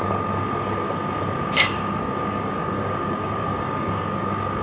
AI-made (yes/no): yes